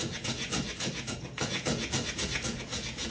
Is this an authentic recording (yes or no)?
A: no